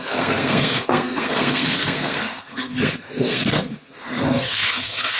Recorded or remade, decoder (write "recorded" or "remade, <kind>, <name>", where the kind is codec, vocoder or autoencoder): remade, codec, SNAC